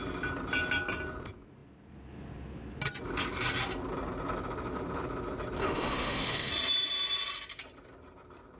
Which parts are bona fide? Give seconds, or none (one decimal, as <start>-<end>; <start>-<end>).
0.0-5.6; 6.5-8.6